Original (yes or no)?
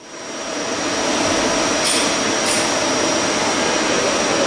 yes